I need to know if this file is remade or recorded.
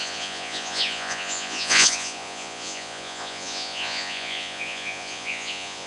remade